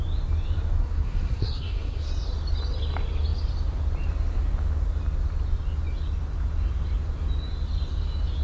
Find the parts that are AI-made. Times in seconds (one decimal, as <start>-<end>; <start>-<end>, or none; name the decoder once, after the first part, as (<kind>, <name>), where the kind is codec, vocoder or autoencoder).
0.8-2.1 (codec, SNAC)